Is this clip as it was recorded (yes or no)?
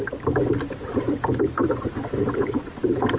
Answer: yes